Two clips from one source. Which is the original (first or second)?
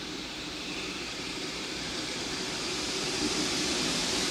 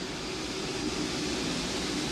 second